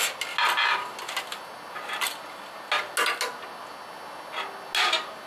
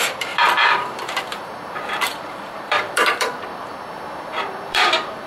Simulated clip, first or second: second